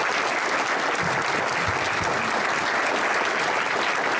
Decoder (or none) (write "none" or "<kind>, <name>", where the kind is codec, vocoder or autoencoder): none